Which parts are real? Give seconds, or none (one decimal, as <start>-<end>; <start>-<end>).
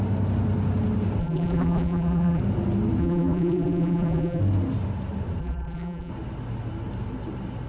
0.0-1.2; 2.4-3.0; 4.4-5.4; 6.1-7.7